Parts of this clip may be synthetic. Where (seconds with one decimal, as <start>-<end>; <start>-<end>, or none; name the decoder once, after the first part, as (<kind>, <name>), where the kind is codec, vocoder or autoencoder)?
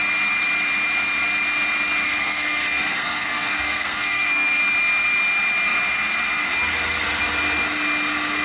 2.0-4.6 (codec, SNAC)